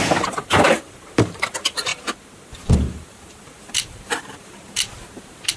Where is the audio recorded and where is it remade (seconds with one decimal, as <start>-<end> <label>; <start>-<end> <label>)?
0.0-1.9 remade; 1.9-2.5 recorded; 2.5-5.6 remade